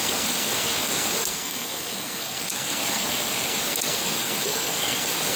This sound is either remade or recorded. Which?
remade